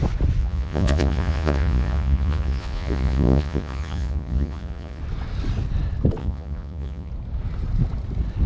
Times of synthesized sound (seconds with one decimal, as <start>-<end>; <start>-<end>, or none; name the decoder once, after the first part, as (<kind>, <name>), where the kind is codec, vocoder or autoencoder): 0.4-5.0 (vocoder, Vocos); 6.2-7.1